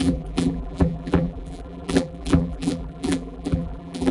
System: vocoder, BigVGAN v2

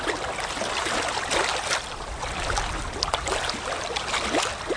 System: none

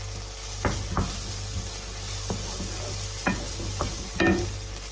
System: none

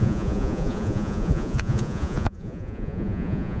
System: vocoder, Vocos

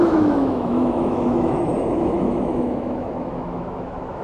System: autoencoder, DAC-VAE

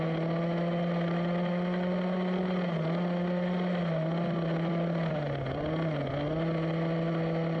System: none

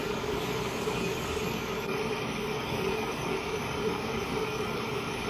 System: codec, DAC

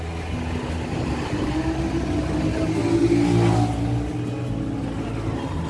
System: none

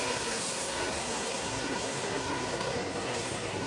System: codec, SNAC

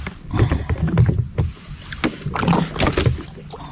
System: none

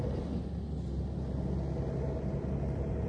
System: none